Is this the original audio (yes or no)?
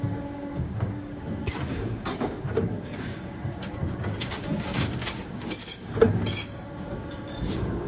no